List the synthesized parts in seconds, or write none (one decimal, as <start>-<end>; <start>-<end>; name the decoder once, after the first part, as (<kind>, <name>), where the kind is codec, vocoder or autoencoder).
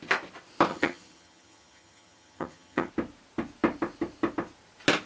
0.7-2.9 (vocoder, HiFi-GAN)